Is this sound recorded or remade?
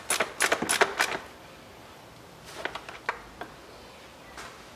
recorded